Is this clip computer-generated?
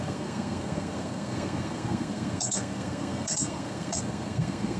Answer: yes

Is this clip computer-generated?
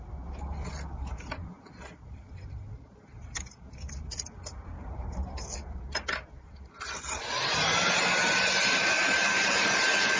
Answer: no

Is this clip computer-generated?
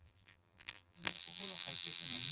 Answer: yes